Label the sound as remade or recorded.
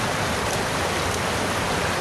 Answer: recorded